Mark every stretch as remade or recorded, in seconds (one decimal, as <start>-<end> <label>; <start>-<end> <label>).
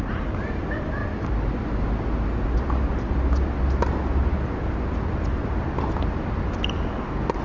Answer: 0.0-7.4 recorded